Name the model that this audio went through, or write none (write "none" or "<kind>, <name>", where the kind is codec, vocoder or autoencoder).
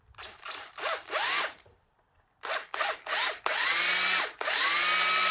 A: none